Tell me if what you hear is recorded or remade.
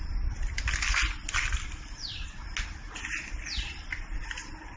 recorded